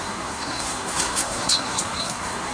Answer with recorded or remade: remade